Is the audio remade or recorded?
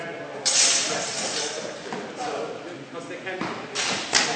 recorded